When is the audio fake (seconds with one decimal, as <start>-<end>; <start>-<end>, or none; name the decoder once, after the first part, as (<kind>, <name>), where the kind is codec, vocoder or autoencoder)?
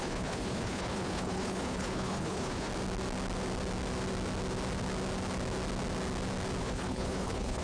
0.0-2.7 (codec, HILCodec); 6.6-7.6